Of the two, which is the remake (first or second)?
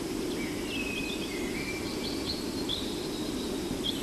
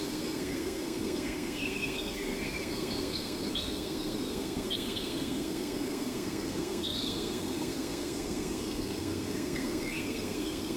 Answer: second